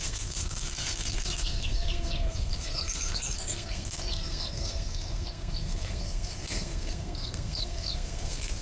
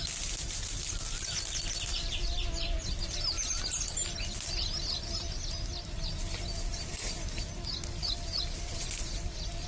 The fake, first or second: first